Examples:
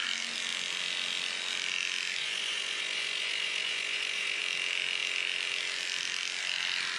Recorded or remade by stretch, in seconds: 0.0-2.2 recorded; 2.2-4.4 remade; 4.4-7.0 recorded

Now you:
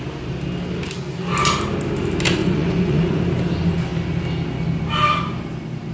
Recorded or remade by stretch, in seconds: 0.0-2.4 recorded; 2.4-3.2 remade; 3.2-5.9 recorded

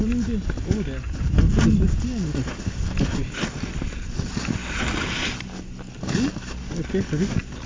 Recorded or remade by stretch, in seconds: 0.0-7.7 recorded